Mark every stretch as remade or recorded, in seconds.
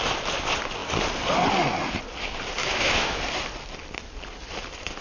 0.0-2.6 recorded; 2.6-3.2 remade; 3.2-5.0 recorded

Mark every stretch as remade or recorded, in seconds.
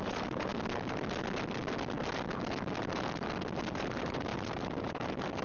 0.0-0.5 remade; 0.5-3.7 recorded; 3.7-5.4 remade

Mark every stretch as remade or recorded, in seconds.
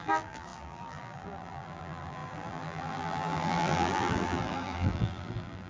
0.0-5.7 remade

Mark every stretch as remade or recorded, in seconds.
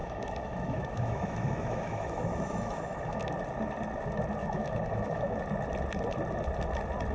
0.0-3.3 remade; 3.3-4.4 recorded; 4.4-5.4 remade; 5.4-7.1 recorded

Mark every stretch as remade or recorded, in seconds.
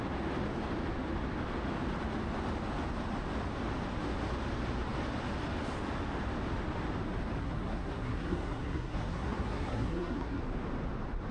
0.0-7.4 recorded; 7.4-10.4 remade; 10.4-11.3 recorded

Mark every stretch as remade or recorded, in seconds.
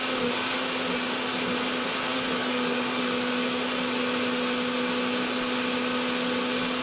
0.0-2.1 recorded; 2.1-3.0 remade; 3.0-6.8 recorded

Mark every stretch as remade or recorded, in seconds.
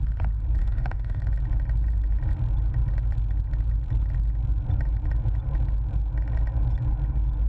0.0-0.6 recorded; 0.6-1.2 remade; 1.2-7.5 recorded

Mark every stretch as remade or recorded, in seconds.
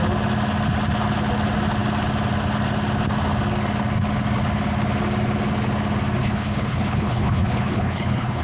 0.0-6.2 recorded; 6.2-8.4 remade